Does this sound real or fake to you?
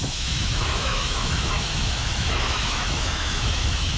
fake